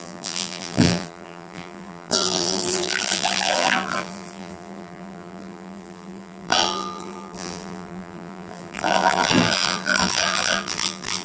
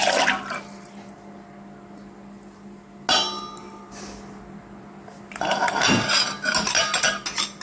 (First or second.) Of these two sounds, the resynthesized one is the first